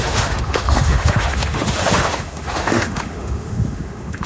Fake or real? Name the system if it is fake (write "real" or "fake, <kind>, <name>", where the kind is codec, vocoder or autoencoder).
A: fake, autoencoder, DAC-VAE